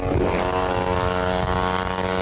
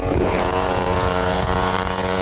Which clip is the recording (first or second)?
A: first